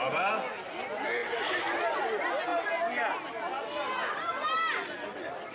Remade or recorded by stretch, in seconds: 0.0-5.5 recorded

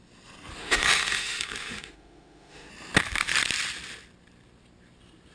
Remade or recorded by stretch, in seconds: 0.0-0.6 recorded; 0.6-2.7 remade; 2.7-5.3 recorded

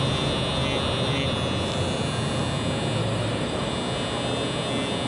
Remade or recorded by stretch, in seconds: 0.0-3.0 recorded; 3.0-3.7 remade; 3.7-5.1 recorded

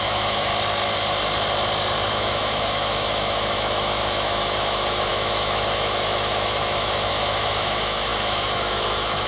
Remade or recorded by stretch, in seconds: 0.0-0.5 remade; 0.5-2.1 recorded; 2.1-9.3 remade

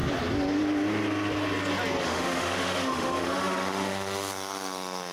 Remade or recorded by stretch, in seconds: 0.0-2.0 recorded; 2.0-5.1 remade